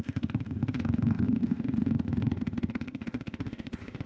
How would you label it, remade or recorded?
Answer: remade